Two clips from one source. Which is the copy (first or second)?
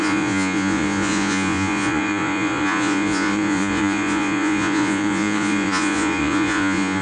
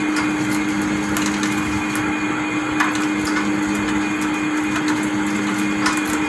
first